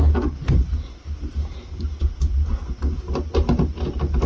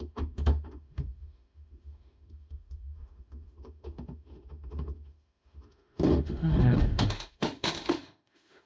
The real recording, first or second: first